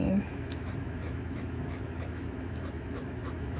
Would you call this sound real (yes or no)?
no